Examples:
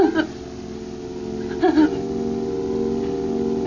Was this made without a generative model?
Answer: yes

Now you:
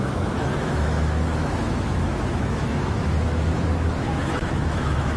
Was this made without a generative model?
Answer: no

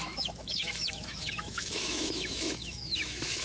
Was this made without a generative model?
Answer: no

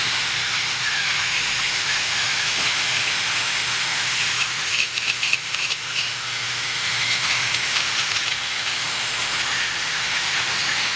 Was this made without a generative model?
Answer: no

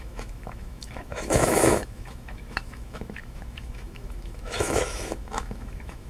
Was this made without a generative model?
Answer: no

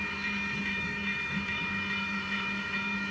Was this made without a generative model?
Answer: no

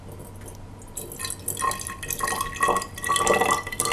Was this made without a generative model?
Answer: yes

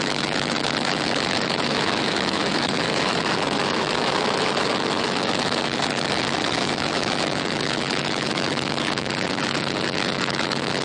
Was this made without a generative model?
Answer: no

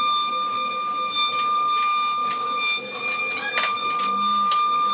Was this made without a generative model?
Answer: yes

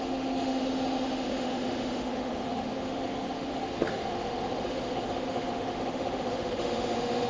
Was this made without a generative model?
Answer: no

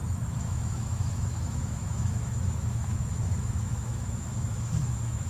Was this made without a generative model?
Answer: no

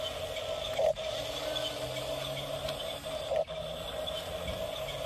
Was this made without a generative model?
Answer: yes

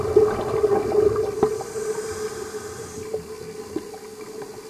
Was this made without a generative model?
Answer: yes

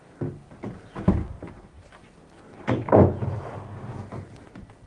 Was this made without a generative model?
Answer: yes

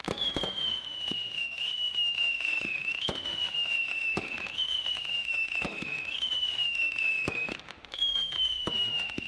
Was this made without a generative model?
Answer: no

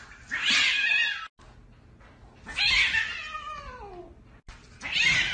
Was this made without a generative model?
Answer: yes